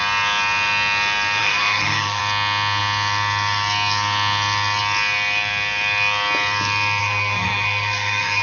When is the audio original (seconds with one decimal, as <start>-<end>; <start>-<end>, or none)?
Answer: 0.0-1.4; 2.2-7.0